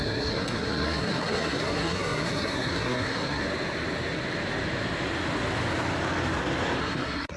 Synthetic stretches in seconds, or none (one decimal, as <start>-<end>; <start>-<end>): 0.0-3.4; 6.8-7.4